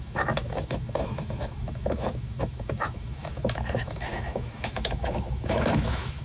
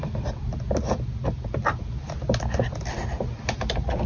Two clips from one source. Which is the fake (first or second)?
first